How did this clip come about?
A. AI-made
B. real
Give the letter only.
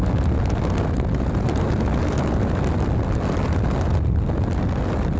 B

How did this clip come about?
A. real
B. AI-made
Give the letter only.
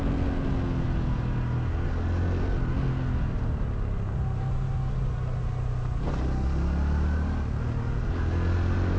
A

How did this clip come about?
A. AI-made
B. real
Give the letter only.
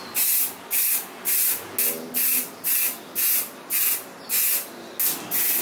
B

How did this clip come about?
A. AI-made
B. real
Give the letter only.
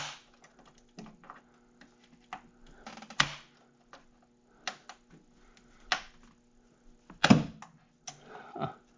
B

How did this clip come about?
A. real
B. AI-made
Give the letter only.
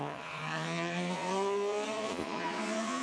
B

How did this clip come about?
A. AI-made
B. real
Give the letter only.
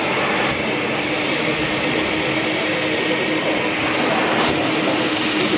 B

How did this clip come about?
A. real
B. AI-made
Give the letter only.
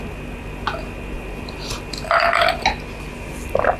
A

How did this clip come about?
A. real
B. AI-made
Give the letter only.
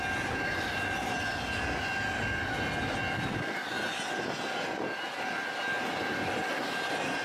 A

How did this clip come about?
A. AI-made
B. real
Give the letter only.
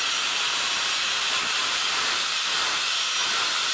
A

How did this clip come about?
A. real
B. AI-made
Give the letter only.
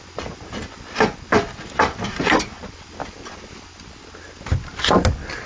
A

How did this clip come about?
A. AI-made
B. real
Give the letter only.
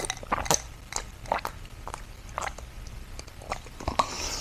B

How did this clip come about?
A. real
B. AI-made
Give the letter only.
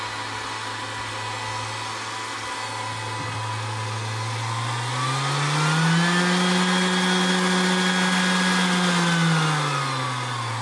A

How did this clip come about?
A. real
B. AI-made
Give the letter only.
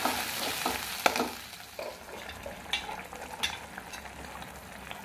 A